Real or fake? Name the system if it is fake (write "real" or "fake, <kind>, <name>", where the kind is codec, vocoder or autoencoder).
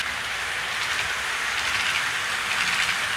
real